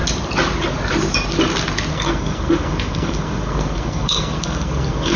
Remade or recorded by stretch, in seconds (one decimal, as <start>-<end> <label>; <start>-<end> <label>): 0.0-1.9 recorded; 1.9-5.2 remade